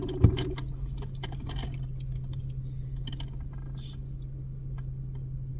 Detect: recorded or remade recorded